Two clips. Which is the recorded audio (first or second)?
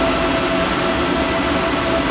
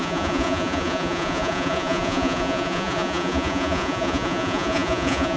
first